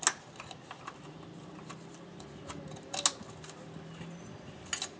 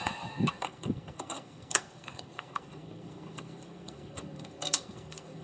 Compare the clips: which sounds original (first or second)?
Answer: first